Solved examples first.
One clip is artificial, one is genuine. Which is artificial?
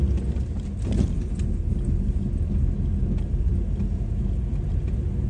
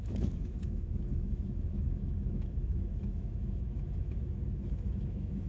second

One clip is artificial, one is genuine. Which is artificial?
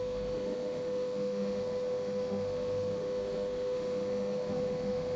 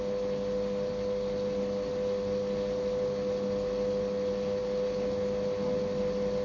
first